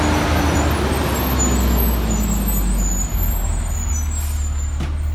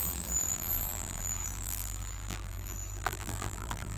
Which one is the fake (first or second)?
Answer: second